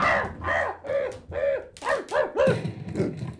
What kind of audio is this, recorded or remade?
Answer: recorded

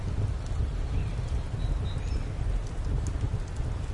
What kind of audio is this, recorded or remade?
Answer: recorded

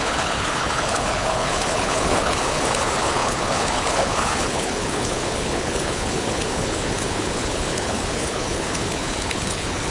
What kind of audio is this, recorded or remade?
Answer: remade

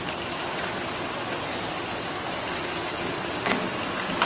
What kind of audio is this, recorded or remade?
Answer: recorded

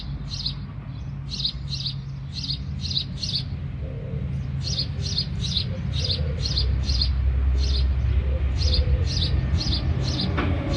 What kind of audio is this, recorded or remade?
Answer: recorded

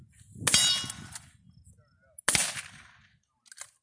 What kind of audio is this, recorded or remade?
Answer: recorded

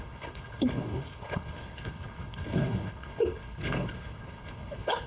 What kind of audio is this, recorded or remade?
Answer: remade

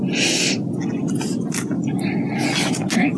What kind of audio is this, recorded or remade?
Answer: recorded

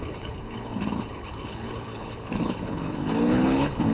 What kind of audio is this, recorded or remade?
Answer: remade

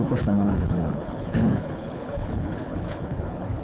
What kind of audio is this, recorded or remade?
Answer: remade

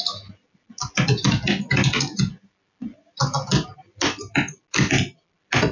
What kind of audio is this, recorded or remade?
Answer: recorded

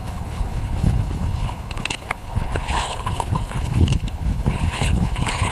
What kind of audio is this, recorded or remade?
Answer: remade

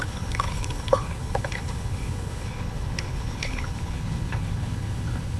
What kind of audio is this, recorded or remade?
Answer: remade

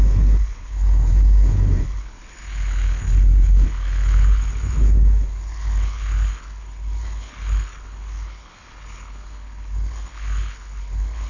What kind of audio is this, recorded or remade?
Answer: remade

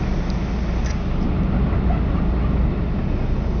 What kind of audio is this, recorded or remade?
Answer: recorded